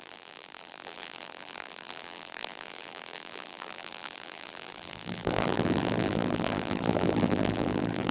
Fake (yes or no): yes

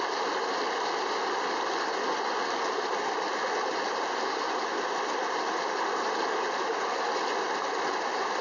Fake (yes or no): no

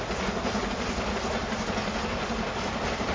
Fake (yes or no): no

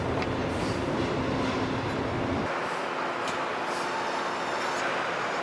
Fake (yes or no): no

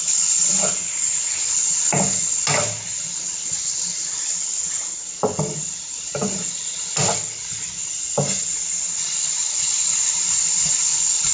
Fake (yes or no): no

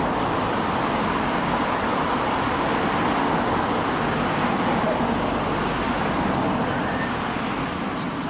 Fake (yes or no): no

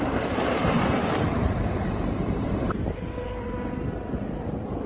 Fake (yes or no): yes